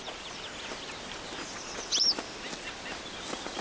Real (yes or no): yes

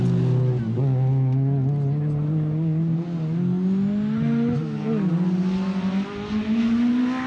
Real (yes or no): yes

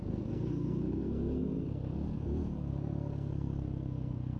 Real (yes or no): no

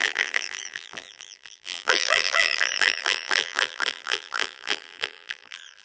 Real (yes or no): no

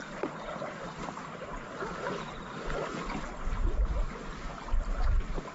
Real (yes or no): yes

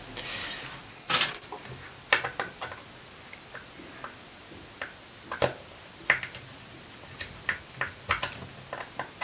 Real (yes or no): yes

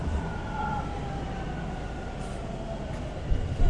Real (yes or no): yes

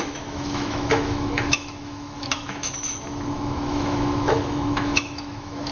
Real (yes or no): no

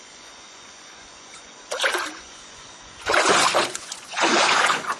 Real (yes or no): no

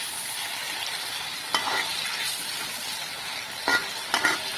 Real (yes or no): no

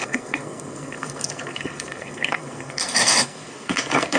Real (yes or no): no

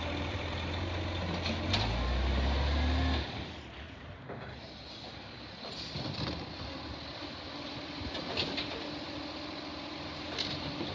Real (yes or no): yes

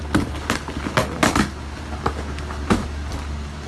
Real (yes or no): yes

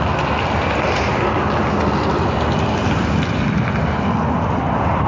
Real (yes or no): yes